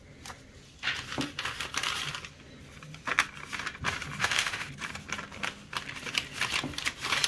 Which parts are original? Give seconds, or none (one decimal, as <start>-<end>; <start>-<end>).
0.0-4.2; 4.7-7.3